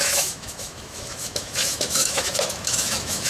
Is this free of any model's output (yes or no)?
no